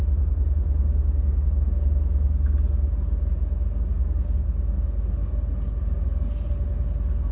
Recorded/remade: recorded